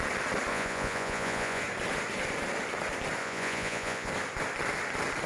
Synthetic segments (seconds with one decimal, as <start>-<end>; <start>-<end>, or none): 0.5-1.6; 3.2-4.1